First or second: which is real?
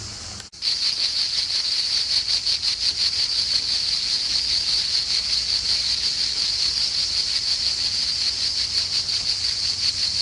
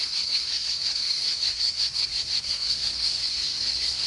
first